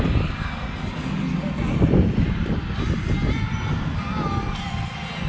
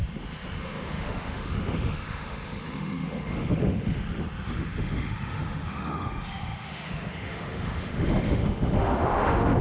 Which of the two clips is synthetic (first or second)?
second